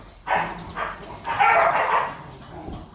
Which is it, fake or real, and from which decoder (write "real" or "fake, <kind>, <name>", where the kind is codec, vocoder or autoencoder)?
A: real